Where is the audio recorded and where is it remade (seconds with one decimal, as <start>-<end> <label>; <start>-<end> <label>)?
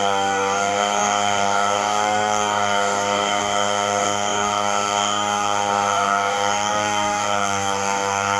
0.0-8.4 remade